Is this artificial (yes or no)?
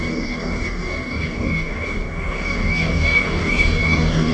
yes